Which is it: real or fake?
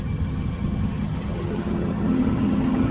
fake